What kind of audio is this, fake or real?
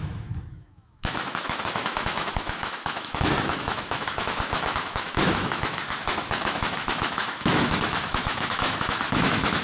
fake